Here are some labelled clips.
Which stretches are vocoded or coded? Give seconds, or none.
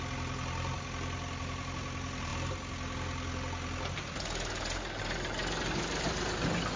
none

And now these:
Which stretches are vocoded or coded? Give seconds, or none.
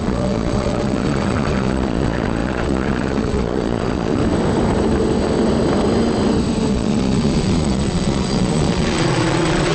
0.0-4.2 (vocoder, Vocos); 6.7-9.7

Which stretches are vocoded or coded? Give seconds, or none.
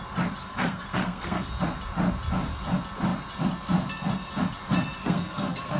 0.4-1.5 (codec, SNAC); 5.0-5.8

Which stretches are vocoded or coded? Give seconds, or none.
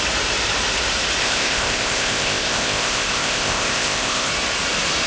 1.2-4.3 (codec, ZipCodec)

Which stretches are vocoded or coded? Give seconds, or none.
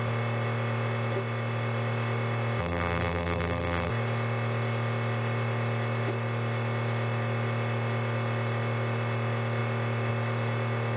2.6-3.9 (vocoder, BigVGAN v2)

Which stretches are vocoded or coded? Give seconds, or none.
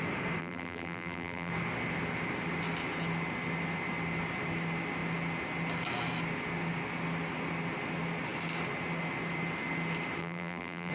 0.4-1.5 (vocoder, BigVGAN v2); 10.2-10.9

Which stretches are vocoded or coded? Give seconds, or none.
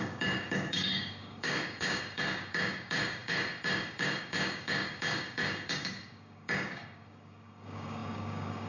0.0-8.7 (codec, DAC)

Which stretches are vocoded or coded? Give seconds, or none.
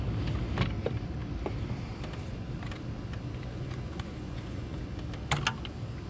3.5-4.8 (vocoder, Vocos)